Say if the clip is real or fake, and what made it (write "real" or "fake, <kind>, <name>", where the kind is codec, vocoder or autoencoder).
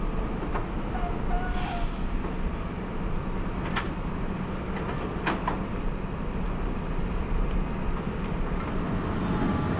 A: real